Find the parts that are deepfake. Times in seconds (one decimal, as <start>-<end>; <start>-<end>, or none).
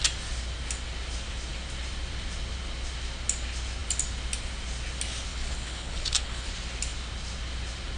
5.3-6.5